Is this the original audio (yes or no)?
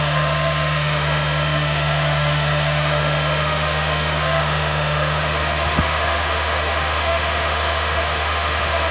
no